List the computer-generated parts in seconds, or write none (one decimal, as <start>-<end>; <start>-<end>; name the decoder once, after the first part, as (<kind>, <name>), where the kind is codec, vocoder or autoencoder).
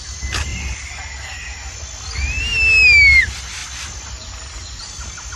none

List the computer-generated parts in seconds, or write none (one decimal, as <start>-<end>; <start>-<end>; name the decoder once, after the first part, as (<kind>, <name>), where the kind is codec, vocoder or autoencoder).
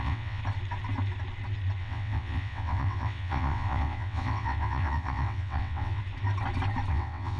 0.0-0.4 (vocoder, WaveNeXt); 1.8-6.0; 6.9-7.4